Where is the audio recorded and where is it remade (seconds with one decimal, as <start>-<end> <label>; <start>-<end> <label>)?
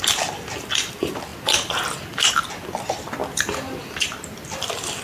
0.0-3.2 recorded; 3.2-5.0 remade